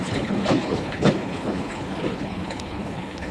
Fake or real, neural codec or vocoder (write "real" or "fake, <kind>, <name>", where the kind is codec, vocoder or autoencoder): fake, codec, HILCodec